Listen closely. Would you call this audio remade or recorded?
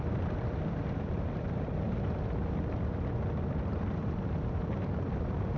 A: remade